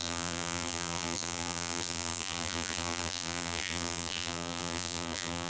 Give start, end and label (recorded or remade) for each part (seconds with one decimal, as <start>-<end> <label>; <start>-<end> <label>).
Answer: 0.0-5.5 remade